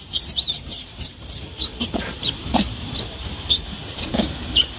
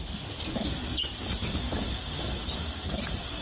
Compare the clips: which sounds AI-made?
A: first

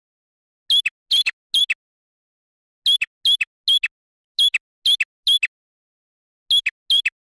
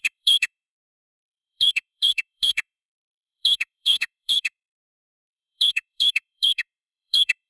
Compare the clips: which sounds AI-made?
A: second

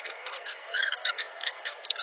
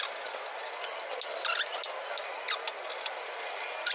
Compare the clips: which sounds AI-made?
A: first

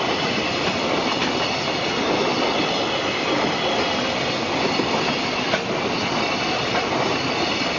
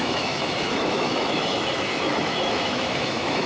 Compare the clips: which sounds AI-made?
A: second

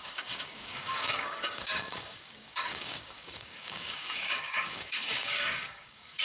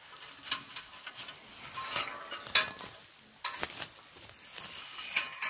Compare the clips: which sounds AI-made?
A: first